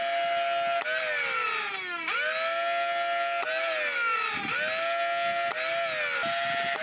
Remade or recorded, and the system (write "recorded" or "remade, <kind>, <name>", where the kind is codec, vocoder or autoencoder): recorded